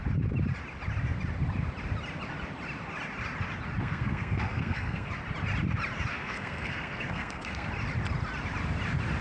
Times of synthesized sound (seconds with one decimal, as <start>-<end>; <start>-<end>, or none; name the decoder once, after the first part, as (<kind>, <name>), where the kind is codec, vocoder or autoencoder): 3.8-5.1 (codec, SNAC); 6.1-7.7